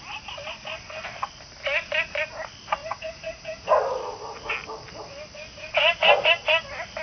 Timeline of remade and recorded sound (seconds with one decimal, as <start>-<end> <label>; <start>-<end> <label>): 0.0-2.8 recorded; 2.8-3.8 remade; 3.8-5.5 recorded; 5.5-6.3 remade; 6.3-7.0 recorded